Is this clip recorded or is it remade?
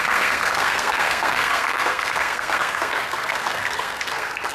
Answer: remade